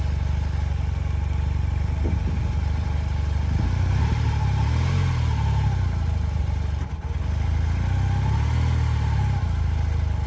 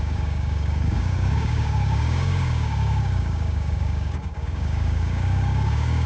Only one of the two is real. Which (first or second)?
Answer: first